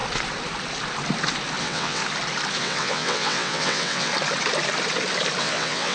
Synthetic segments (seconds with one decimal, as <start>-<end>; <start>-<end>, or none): 1.6-2.0; 2.6-4.1; 5.4-5.9